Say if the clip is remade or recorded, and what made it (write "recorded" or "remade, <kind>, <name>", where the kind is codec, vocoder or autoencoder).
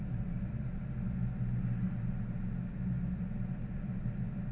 recorded